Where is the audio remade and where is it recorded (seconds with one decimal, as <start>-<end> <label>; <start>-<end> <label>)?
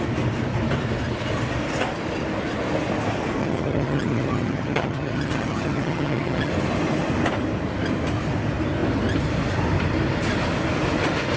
0.0-3.4 recorded; 3.4-6.5 remade; 6.5-11.4 recorded